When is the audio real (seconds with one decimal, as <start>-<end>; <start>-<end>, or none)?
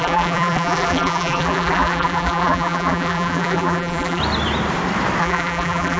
4.2-5.2